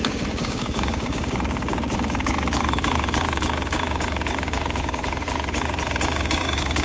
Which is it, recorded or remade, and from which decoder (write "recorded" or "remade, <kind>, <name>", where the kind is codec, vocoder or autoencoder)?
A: remade, codec, DAC